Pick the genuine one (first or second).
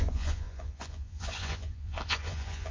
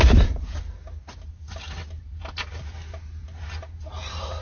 second